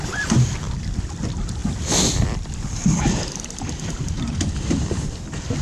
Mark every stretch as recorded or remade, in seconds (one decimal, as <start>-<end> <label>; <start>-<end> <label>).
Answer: 0.0-5.6 recorded